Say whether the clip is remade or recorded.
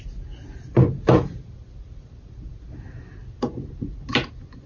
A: recorded